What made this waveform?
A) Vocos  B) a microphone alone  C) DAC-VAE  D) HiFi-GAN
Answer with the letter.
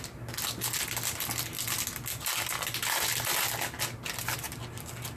B